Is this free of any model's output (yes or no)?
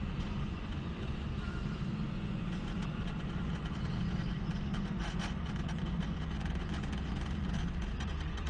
no